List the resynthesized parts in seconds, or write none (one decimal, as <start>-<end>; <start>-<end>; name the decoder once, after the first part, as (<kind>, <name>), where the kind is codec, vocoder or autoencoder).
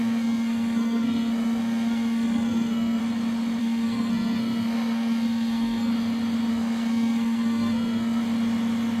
0.0-3.0 (codec, SNAC); 3.6-5.9; 6.5-8.2